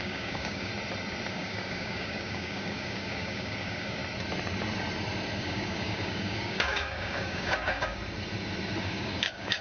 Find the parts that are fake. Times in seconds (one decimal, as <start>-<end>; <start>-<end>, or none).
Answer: 0.0-0.7; 1.3-4.0; 5.4-8.0; 8.8-9.6